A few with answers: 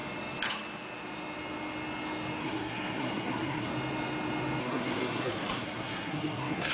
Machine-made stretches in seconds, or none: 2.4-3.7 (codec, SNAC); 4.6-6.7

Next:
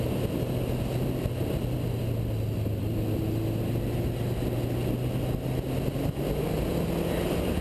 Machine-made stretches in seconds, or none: none

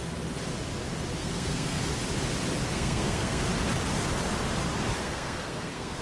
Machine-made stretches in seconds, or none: 1.2-1.9 (codec, SNAC); 2.7-3.5; 5.0-6.0

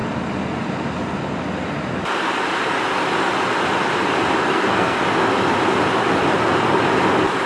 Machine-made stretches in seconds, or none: 4.4-5.0 (codec, SNAC)